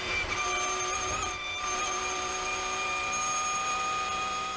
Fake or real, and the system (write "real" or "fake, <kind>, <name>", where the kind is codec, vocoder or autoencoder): fake, vocoder, BigVGAN v2